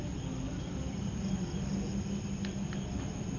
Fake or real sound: real